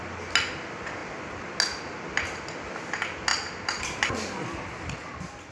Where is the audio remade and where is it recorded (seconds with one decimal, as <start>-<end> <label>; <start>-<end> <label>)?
0.0-5.5 recorded